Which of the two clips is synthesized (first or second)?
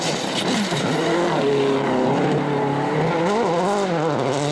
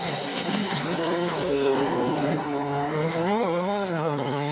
second